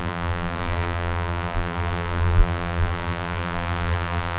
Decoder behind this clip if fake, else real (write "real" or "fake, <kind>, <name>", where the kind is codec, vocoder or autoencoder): fake, vocoder, BigVGAN v2